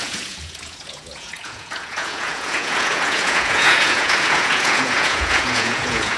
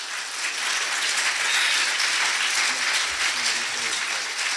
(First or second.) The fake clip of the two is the first